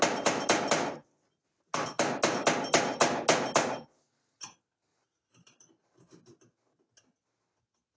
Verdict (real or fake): real